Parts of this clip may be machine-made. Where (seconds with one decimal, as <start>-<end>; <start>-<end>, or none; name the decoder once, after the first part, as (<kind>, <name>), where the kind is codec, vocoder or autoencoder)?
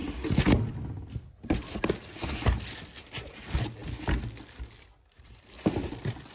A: none